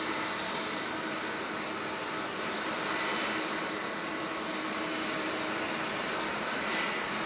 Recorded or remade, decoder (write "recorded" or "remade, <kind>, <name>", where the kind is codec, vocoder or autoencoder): recorded